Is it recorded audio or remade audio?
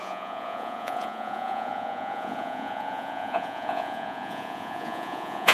remade